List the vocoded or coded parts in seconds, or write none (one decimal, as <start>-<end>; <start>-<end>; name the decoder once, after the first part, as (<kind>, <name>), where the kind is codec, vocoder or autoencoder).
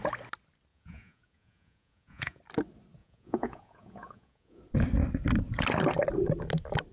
0.7-2.4 (vocoder, Vocos); 3.0-4.6